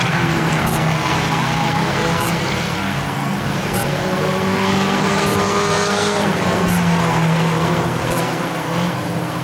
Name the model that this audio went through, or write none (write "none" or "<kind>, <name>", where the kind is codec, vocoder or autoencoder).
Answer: codec, SNAC